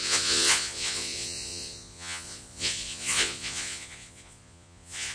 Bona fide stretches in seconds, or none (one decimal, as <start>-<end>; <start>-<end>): none